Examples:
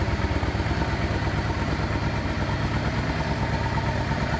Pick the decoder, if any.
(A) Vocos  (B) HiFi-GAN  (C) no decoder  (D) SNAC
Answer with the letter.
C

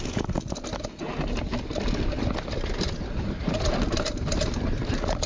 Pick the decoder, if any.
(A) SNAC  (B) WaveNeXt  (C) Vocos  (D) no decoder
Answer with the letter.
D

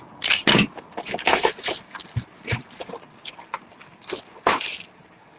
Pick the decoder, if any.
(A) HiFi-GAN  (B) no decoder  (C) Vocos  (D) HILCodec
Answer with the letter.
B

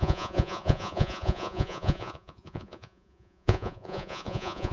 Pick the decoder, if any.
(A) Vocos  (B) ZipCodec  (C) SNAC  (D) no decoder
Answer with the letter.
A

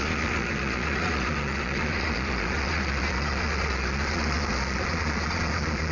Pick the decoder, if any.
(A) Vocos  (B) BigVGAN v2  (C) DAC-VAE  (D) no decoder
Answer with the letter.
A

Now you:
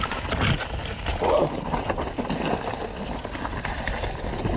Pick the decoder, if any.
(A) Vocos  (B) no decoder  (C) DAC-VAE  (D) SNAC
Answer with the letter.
B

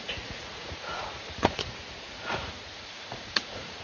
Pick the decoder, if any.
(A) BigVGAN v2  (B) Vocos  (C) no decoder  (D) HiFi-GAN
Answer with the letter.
B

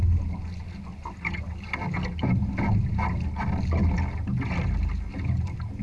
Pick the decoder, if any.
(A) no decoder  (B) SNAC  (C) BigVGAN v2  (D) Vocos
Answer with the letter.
A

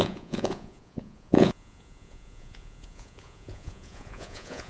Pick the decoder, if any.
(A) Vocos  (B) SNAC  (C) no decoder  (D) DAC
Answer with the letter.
A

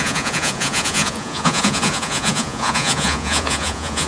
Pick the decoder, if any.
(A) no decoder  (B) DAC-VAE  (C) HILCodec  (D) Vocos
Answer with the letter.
D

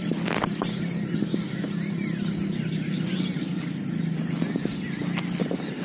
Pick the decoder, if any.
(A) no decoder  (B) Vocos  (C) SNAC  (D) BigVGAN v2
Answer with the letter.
A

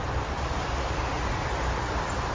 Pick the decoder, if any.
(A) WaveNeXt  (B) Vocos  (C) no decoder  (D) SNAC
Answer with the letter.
C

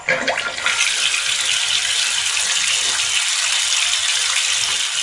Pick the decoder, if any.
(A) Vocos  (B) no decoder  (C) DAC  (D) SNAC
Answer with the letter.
B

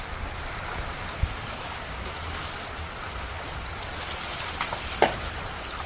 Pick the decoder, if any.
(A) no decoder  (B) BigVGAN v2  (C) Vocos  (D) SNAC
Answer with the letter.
A